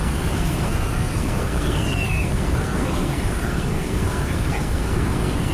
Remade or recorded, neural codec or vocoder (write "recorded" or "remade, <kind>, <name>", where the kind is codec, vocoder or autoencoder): remade, codec, SNAC